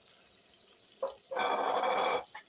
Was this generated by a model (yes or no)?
no